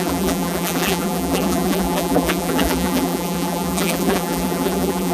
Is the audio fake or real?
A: fake